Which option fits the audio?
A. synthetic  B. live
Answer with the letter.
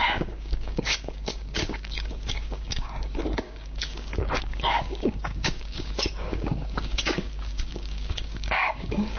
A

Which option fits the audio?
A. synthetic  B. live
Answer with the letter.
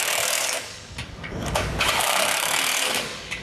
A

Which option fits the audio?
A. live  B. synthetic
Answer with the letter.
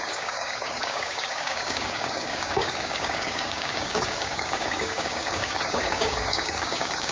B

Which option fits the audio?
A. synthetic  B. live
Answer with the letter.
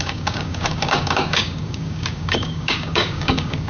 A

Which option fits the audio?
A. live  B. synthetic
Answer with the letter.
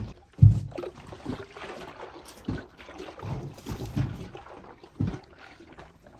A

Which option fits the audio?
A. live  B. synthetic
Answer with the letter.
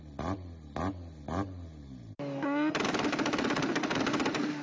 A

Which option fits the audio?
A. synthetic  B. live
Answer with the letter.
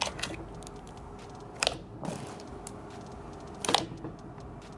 B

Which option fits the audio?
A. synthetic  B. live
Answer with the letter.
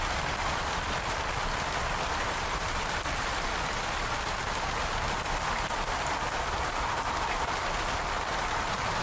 B